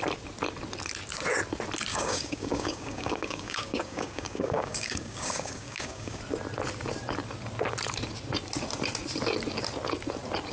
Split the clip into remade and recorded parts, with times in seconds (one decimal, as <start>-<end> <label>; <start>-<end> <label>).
0.0-1.9 recorded; 1.9-6.2 remade; 6.2-10.5 recorded